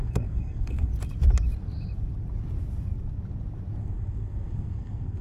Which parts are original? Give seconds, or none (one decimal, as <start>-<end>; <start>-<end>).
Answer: 0.9-3.8